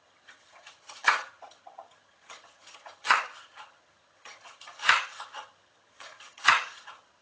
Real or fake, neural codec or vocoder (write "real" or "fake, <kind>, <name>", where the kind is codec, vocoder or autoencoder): fake, vocoder, HiFi-GAN